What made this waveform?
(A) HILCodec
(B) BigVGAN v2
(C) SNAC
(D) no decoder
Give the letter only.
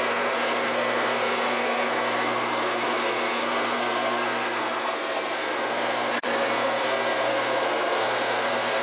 C